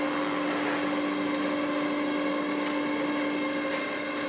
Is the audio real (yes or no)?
yes